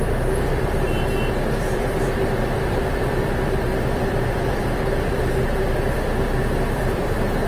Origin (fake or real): fake